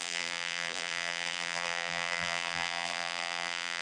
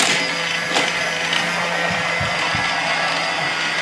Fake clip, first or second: first